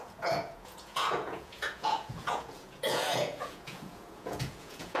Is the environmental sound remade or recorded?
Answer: remade